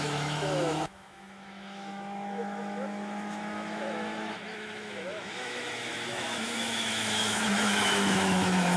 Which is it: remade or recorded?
remade